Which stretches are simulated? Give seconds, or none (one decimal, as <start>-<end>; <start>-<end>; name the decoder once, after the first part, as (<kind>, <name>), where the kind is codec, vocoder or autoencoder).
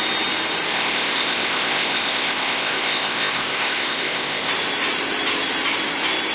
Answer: 0.7-4.5 (codec, ZipCodec)